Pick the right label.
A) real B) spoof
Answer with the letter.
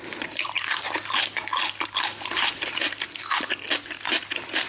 A